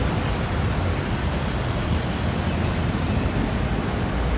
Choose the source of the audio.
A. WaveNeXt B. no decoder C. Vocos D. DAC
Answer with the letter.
B